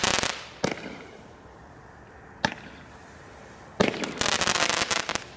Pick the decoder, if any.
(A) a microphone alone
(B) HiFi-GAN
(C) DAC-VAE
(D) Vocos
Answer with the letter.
A